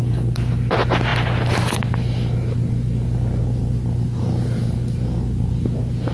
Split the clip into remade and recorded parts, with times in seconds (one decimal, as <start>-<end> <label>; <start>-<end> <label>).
0.0-6.1 recorded